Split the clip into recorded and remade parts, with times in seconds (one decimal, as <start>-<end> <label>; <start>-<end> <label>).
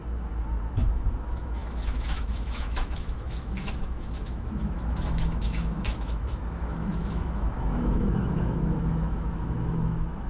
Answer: 0.0-0.8 recorded; 0.8-10.3 remade